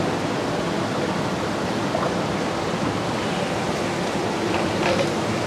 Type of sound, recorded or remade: recorded